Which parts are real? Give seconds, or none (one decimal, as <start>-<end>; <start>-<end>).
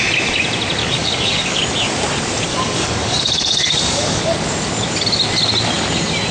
0.0-0.8; 1.6-2.5; 4.2-6.3